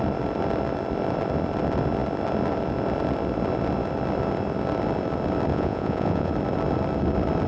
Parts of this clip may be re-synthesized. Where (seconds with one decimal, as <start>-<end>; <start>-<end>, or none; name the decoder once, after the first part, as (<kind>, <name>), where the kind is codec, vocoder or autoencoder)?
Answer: 5.5-6.3 (vocoder, Vocos)